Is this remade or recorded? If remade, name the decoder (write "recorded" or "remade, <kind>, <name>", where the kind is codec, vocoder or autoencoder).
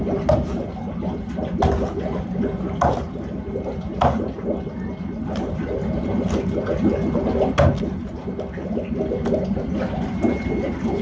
recorded